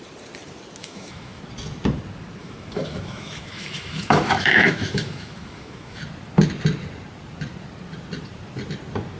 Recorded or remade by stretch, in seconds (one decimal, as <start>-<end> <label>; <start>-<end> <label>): 0.0-0.8 recorded; 0.8-1.4 remade; 1.4-2.4 recorded; 2.4-6.0 remade; 6.0-9.2 recorded